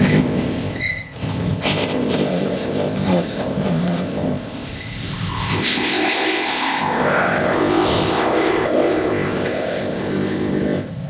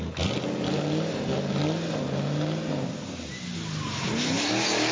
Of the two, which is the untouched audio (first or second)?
second